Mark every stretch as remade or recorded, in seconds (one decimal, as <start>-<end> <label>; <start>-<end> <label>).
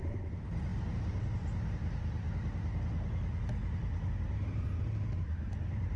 0.0-0.7 remade; 0.7-4.1 recorded; 4.1-6.0 remade